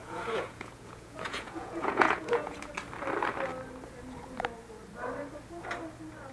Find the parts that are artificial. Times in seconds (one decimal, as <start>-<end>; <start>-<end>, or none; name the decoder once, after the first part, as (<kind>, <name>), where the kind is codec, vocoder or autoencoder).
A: 0.0-2.7 (vocoder, Vocos)